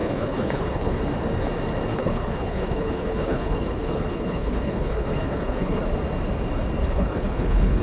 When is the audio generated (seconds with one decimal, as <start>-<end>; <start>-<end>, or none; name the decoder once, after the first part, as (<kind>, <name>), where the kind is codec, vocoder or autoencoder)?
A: 0.0-1.0 (codec, HILCodec); 1.9-5.8; 6.8-7.8